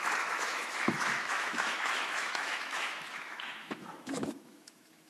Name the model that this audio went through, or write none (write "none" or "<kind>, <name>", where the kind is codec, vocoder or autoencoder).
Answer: autoencoder, DAC-VAE